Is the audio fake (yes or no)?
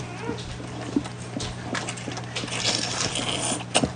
no